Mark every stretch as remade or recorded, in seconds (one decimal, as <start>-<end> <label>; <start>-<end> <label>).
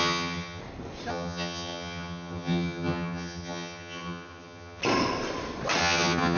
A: 0.0-0.6 remade; 0.6-1.1 recorded; 1.1-4.8 remade; 4.8-5.8 recorded; 5.8-6.4 remade